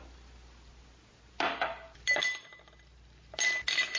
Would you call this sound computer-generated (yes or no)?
no